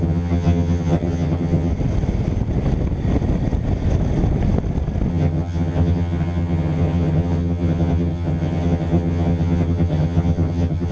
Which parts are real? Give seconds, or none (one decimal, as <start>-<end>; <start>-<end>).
1.7-5.1